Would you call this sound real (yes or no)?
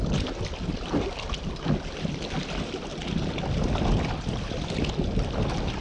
yes